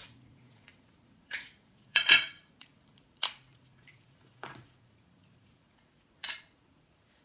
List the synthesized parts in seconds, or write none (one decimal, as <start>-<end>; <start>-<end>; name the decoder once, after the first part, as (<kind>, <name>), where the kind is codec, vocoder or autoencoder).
0.0-7.2 (vocoder, Vocos)